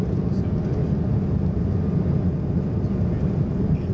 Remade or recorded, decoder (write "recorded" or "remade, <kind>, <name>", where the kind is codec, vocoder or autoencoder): recorded